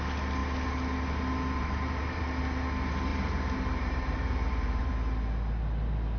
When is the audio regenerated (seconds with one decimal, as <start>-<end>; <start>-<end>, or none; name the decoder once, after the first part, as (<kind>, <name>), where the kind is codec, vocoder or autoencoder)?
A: 1.6-2.2 (vocoder, BigVGAN v2); 3.1-4.9